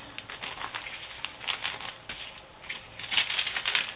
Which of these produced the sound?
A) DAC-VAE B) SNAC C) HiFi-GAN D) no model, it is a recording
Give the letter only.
D